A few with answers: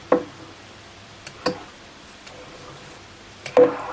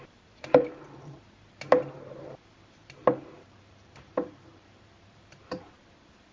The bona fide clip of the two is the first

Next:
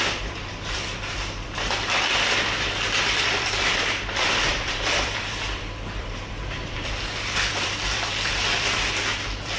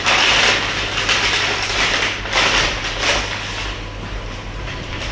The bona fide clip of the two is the second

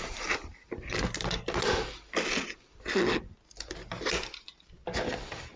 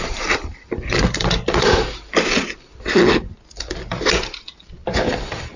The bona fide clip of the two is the first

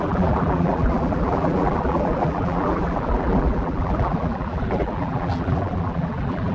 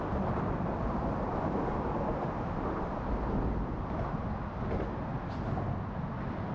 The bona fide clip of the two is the second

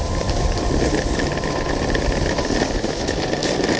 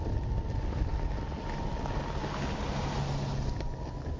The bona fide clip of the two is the second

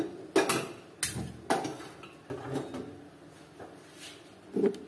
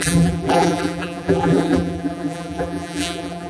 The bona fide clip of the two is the first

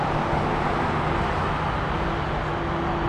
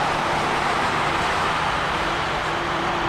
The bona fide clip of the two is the first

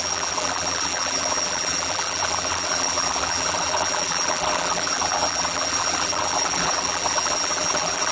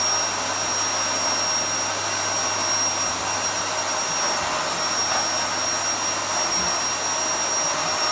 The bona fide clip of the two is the second